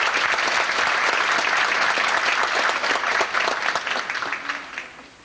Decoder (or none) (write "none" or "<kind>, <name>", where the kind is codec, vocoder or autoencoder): none